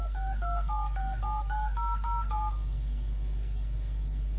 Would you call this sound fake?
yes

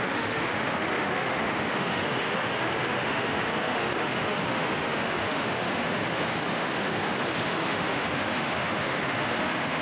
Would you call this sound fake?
yes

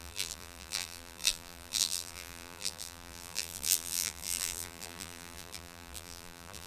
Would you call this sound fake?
yes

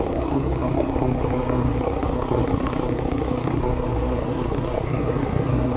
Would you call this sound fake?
yes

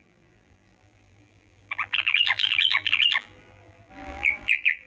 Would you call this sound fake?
yes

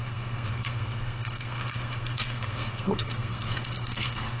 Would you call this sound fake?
yes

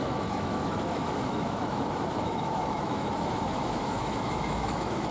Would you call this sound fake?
yes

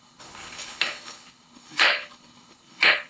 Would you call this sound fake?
yes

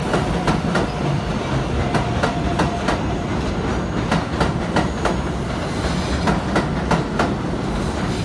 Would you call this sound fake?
no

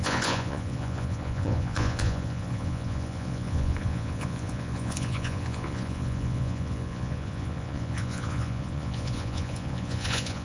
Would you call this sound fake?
yes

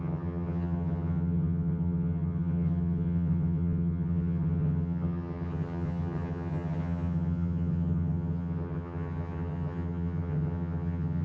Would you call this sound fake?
yes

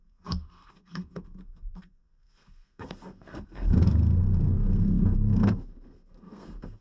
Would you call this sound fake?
yes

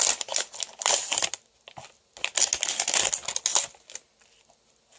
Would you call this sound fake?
no